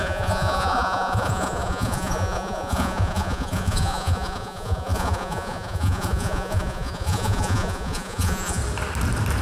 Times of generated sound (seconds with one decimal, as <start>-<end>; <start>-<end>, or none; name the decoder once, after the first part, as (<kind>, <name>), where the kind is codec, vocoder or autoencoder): 0.0-8.6 (vocoder, Vocos)